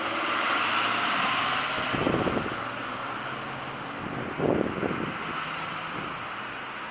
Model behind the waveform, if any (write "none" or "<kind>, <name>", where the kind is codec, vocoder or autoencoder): none